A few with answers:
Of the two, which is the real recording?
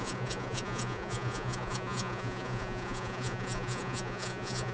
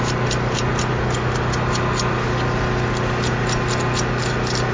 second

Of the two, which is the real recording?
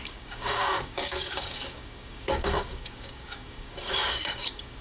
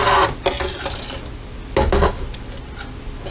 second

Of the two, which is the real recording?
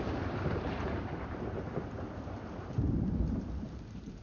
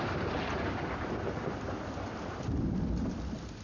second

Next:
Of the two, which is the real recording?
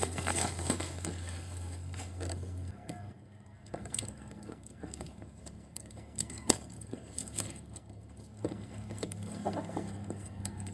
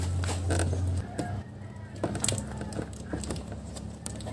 second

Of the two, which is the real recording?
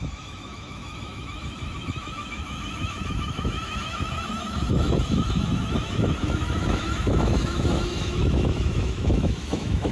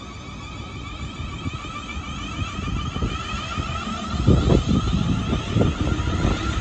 second